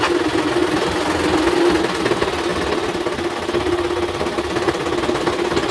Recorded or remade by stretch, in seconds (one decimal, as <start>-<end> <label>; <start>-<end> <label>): 0.0-5.7 recorded